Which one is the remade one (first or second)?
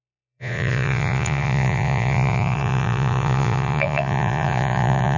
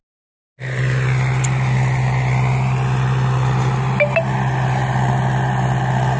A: first